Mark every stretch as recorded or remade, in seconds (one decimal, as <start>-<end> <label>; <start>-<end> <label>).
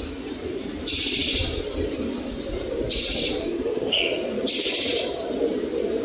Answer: 0.0-3.4 recorded; 3.4-4.0 remade; 4.0-6.0 recorded